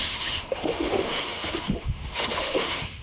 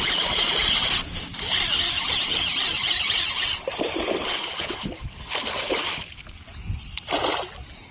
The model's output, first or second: first